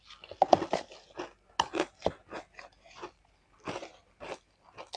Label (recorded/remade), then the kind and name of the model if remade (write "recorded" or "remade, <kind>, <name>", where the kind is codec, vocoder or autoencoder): recorded